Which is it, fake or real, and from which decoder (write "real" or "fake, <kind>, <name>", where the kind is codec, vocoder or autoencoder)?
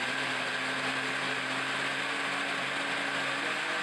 real